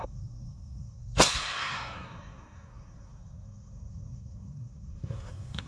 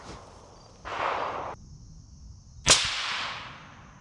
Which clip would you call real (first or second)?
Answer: second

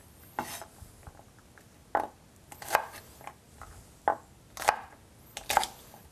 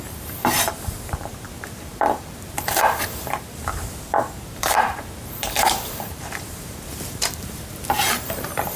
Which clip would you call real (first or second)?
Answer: first